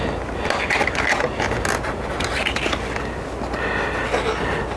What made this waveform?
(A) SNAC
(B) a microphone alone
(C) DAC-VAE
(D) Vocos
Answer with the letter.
B